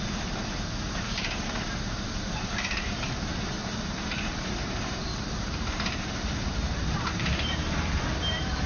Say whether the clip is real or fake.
fake